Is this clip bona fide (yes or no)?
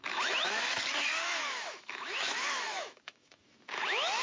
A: no